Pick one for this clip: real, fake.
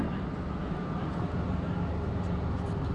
real